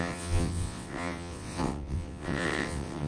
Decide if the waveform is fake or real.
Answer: fake